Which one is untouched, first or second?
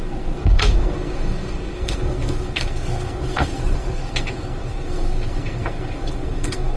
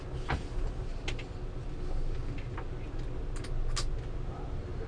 second